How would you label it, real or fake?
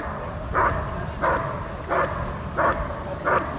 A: real